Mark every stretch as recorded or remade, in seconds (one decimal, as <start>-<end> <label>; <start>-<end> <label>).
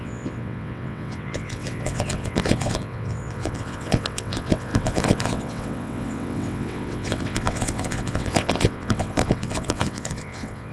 0.0-10.7 remade